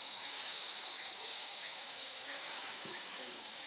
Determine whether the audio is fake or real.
fake